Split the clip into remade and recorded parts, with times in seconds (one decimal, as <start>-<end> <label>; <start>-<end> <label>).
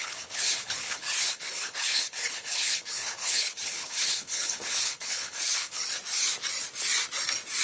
0.0-5.8 remade; 5.8-7.6 recorded